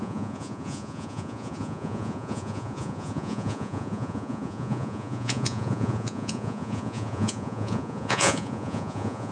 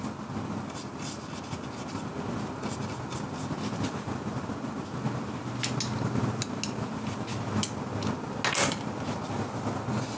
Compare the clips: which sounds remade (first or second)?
first